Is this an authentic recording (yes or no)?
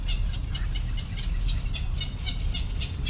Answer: yes